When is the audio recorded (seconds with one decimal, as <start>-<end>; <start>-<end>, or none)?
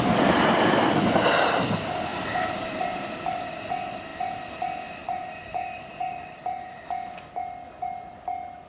0.0-2.1; 3.4-5.0; 6.8-8.7